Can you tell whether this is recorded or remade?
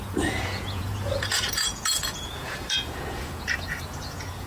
remade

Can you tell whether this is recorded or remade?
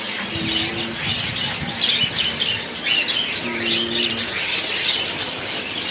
recorded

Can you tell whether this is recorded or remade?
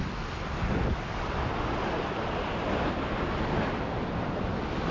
recorded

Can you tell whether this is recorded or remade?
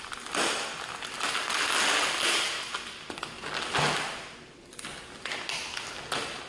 recorded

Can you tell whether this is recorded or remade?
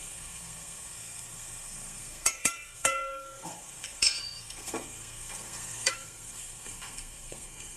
remade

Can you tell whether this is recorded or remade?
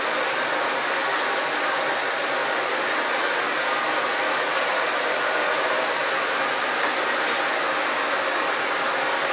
recorded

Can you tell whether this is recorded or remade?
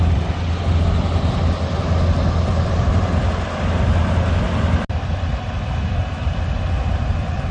recorded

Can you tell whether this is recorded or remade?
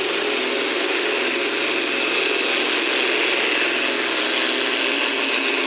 recorded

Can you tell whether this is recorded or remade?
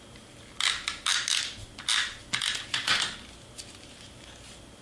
recorded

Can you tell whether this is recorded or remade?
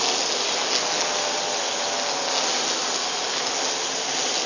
recorded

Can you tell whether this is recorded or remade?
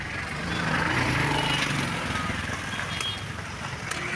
recorded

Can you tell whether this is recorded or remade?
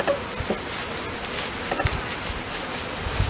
recorded